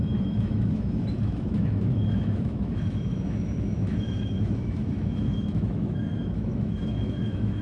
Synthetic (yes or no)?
yes